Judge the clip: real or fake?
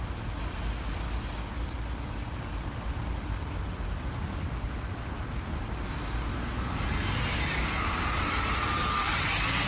real